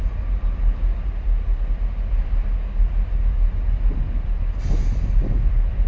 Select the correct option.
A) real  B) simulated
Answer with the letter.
A